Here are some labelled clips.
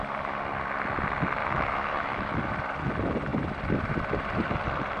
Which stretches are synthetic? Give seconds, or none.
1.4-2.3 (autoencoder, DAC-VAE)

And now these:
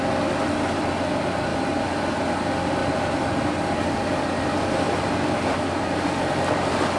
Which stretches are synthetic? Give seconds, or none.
none

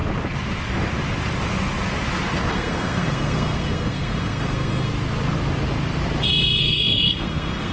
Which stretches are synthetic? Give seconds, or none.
2.5-4.9 (codec, SNAC); 6.6-7.7